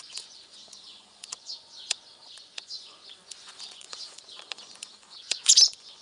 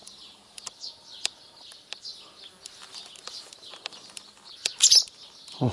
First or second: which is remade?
first